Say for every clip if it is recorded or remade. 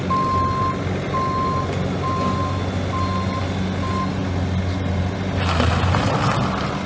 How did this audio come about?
recorded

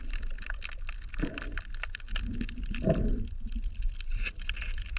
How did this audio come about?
recorded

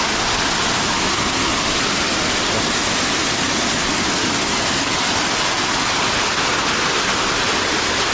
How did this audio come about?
recorded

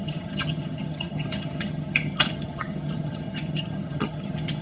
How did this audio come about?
remade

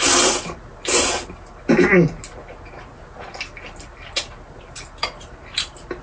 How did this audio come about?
recorded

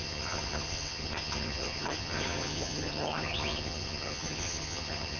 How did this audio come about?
remade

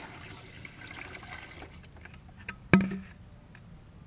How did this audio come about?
recorded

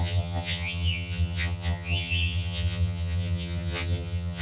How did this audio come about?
remade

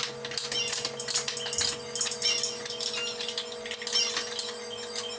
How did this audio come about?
recorded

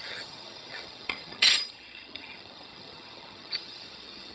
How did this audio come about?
remade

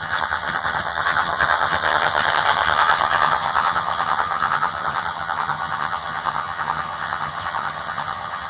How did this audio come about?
remade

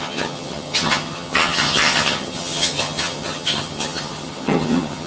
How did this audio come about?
remade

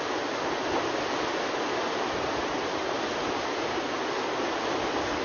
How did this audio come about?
recorded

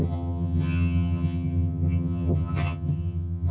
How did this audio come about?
remade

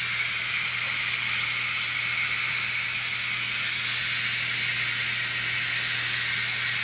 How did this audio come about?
recorded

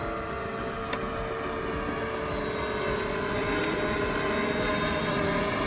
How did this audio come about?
recorded